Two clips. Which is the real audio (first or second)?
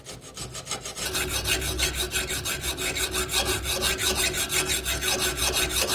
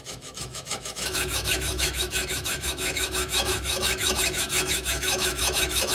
first